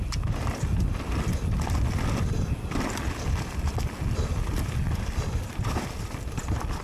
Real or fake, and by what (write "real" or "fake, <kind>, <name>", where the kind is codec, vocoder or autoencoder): real